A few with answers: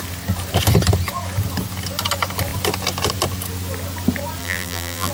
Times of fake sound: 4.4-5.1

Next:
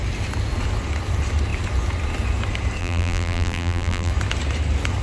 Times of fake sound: 2.8-4.1

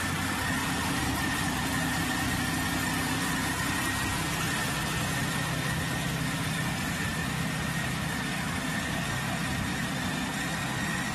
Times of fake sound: 0.6-2.4; 2.8-3.5; 8.3-9.1